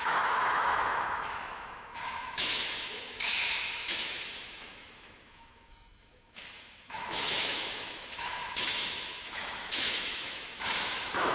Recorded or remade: remade